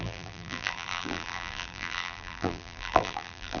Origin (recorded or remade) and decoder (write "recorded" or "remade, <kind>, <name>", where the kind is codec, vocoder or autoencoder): remade, vocoder, BigVGAN v2